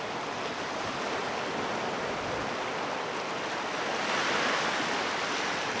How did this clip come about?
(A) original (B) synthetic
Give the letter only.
A